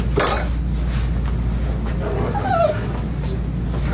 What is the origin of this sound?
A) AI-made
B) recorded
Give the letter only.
B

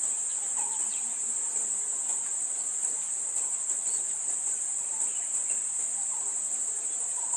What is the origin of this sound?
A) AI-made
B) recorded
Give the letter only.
B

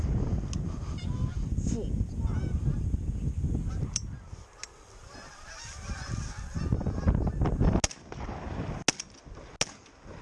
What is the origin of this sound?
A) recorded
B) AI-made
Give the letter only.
A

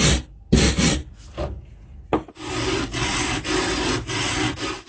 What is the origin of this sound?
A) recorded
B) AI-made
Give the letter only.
A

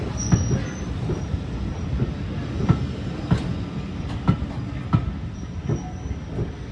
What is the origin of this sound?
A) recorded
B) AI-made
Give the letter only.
A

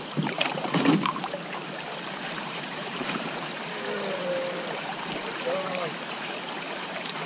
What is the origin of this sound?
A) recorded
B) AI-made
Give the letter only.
B